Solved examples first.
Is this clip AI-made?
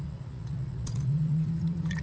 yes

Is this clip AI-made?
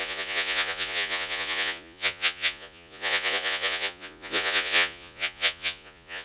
yes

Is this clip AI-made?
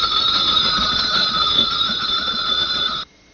yes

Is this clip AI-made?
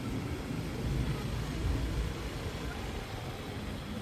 no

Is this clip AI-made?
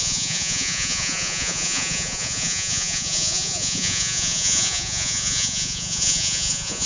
yes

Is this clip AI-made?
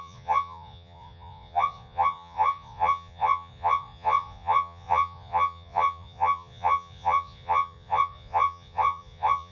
yes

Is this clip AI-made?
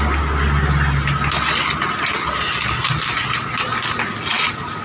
no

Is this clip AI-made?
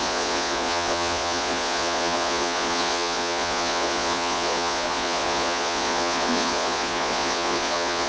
yes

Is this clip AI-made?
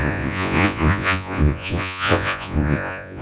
yes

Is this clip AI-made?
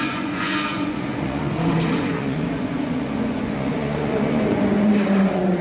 yes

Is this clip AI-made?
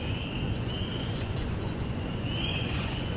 yes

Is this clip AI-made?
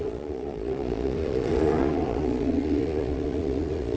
yes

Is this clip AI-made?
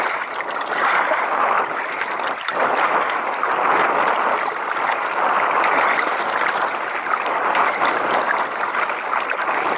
no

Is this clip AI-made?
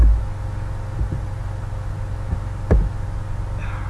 no